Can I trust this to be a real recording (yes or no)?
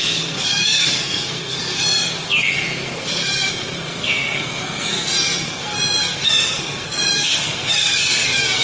no